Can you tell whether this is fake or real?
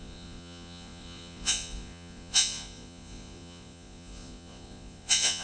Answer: fake